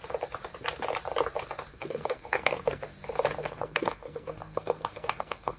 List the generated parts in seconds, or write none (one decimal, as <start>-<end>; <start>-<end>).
1.7-2.8; 3.4-5.6